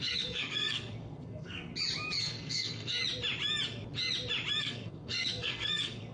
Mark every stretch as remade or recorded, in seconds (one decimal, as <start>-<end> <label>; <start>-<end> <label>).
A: 0.0-1.7 remade; 1.7-2.2 recorded; 2.2-3.0 remade; 3.0-4.6 recorded; 4.6-6.1 remade

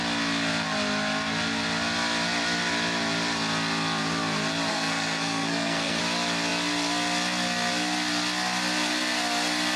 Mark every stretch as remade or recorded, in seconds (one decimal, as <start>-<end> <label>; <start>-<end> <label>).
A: 0.0-4.7 recorded; 4.7-6.0 remade; 6.0-9.8 recorded

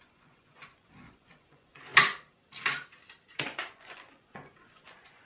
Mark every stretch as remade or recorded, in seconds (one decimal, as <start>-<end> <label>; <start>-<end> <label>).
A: 0.0-1.9 remade; 1.9-3.4 recorded; 3.4-5.3 remade

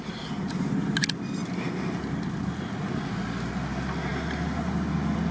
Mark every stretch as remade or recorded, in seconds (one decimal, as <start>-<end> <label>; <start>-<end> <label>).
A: 0.0-5.3 recorded

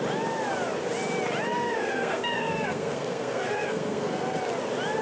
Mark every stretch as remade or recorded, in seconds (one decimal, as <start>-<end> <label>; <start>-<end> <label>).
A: 0.0-1.5 recorded; 1.5-4.4 remade; 4.4-5.0 recorded

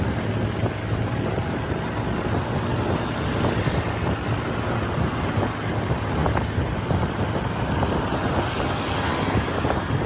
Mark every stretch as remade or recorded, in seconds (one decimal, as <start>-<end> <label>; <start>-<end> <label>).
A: 0.0-10.1 recorded